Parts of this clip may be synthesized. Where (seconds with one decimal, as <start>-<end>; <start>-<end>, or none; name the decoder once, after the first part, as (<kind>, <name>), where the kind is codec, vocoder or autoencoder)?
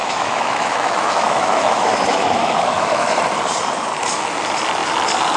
0.0-3.2 (autoencoder, DAC-VAE)